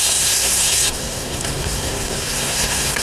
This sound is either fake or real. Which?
fake